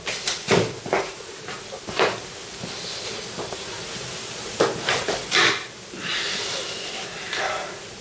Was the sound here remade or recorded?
recorded